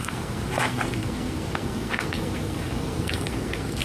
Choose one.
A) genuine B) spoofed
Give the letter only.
B